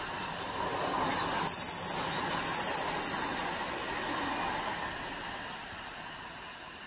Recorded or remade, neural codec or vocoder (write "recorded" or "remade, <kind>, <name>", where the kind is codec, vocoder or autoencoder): recorded